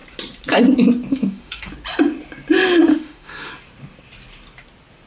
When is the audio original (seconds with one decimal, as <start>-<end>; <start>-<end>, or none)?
0.0-1.1; 1.7-2.9; 3.5-5.1